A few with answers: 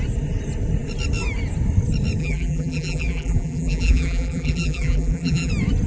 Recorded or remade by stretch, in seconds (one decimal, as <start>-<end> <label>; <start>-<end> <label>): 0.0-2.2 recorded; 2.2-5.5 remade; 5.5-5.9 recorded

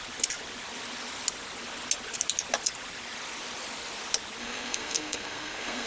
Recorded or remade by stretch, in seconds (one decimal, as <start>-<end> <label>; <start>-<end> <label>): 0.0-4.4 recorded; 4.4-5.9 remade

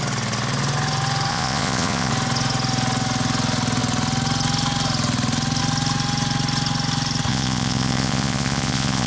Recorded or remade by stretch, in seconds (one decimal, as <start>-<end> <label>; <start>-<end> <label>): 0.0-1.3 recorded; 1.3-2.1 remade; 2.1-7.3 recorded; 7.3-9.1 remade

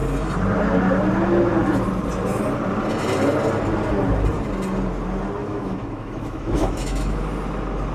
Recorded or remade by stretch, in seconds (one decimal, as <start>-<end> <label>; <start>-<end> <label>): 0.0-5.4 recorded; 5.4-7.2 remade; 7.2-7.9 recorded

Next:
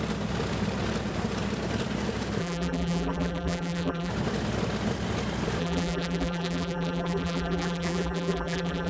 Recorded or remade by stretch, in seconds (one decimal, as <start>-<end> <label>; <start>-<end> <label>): 0.0-2.4 recorded; 2.4-4.1 remade; 4.1-5.6 recorded; 5.6-8.9 remade

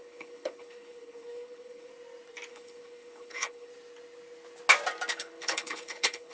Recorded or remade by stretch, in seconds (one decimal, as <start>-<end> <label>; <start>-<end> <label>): 0.0-1.9 remade; 1.9-2.5 recorded; 2.5-3.7 remade; 3.7-5.1 recorded; 5.1-6.3 remade